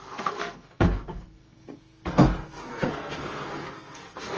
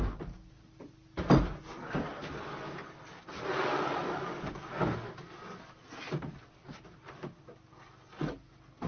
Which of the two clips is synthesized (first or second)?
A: first